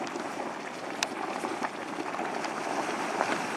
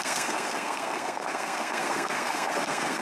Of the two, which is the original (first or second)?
first